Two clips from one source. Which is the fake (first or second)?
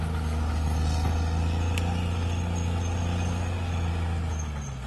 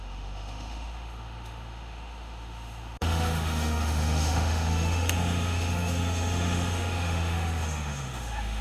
second